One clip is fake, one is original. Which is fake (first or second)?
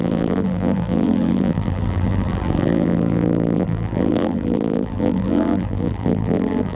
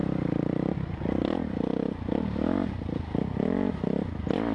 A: first